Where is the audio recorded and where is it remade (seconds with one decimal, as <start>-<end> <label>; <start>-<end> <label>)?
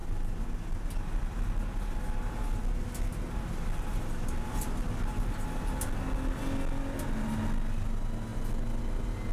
0.0-9.3 recorded